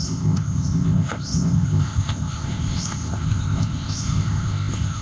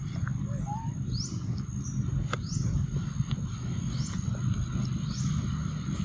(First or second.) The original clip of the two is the second